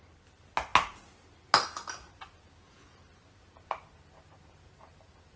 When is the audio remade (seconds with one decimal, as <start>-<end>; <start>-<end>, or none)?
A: none